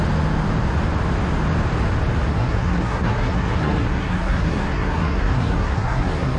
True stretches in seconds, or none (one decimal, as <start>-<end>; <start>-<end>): 0.0-2.3

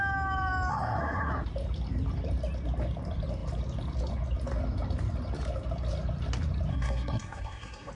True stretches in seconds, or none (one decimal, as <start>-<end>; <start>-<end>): 0.0-0.7; 1.3-6.7

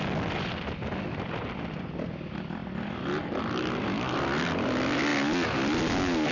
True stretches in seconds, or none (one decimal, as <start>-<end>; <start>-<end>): 0.0-6.3